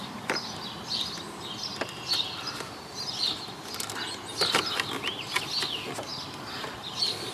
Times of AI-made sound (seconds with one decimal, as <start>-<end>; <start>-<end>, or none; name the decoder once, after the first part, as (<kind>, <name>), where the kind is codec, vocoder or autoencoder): none